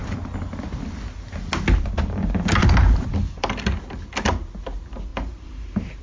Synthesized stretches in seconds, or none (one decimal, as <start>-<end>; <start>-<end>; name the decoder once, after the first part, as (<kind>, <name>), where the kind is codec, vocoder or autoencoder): 5.1-6.0 (vocoder, BigVGAN v2)